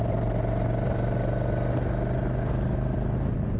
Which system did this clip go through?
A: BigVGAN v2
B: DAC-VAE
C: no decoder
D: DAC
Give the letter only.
C